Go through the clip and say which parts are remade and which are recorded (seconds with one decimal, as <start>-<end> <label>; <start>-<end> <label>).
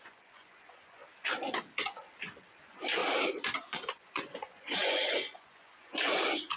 0.0-1.0 remade; 1.0-2.6 recorded; 2.6-3.0 remade; 3.0-3.6 recorded; 3.6-6.6 remade